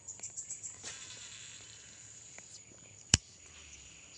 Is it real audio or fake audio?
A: fake